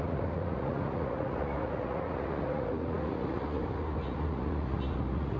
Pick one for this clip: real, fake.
fake